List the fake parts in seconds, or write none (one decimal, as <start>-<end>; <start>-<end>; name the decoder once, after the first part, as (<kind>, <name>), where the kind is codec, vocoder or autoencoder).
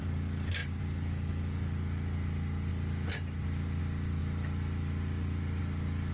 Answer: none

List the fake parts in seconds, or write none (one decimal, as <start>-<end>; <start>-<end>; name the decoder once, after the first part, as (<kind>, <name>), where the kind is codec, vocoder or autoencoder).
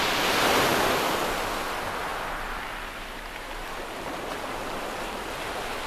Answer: none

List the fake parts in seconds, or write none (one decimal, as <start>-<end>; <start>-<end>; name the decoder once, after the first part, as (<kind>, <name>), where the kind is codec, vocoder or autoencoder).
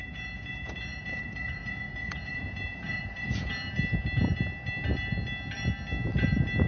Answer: 0.0-3.5 (vocoder, Vocos)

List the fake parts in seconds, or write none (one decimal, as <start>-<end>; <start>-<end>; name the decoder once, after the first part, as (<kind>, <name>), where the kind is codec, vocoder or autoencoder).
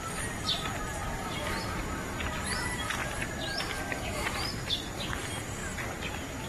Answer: 1.0-1.5 (vocoder, BigVGAN v2); 3.0-4.7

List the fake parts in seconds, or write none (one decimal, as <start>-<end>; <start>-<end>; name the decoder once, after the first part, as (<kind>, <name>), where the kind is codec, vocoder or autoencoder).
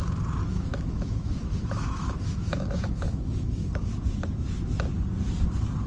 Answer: 0.4-3.9 (autoencoder, DAC-VAE)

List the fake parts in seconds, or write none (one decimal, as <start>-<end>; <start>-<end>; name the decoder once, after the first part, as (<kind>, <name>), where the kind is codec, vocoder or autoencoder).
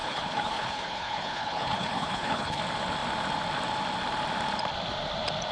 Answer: 0.0-2.6 (codec, HILCodec)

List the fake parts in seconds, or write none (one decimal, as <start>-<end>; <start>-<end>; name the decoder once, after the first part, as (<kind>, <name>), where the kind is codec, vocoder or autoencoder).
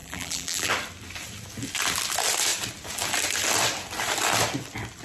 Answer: 0.0-0.7 (vocoder, BigVGAN v2)